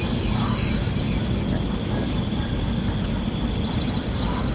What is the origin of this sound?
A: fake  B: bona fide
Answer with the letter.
B